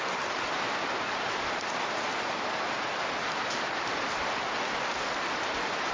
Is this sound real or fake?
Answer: real